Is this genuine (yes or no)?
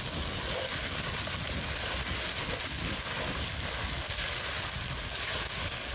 yes